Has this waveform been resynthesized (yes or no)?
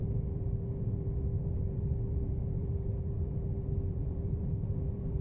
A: yes